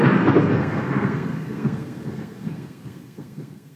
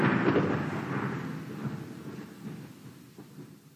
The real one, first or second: second